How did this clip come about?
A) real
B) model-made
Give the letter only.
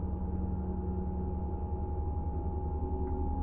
A